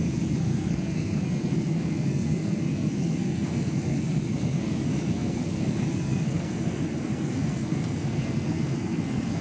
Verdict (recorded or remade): remade